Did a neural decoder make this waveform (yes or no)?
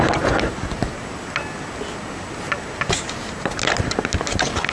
no